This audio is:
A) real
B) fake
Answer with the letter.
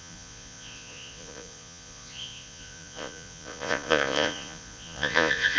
B